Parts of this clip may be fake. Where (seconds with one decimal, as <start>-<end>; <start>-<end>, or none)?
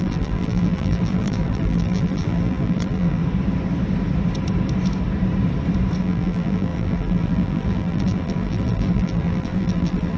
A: 0.0-3.2; 6.0-10.2